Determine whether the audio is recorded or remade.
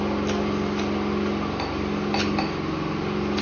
recorded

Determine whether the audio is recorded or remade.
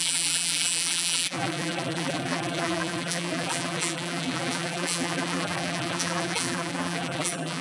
remade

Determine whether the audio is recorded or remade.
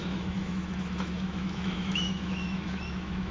remade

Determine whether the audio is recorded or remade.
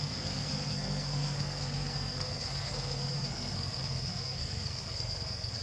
remade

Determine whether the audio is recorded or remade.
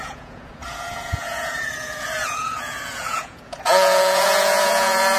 remade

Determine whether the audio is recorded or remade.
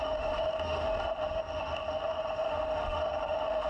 remade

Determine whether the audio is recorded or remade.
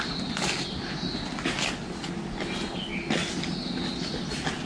recorded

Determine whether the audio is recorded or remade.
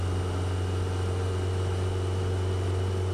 recorded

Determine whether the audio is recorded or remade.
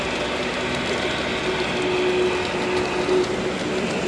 recorded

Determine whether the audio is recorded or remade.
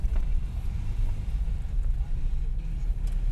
recorded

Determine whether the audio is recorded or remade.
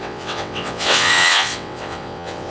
remade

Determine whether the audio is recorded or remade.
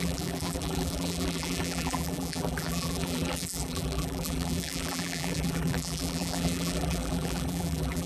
remade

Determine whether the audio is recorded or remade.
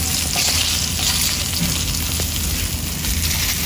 recorded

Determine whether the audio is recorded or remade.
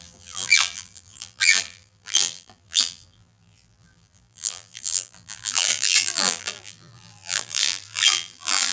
remade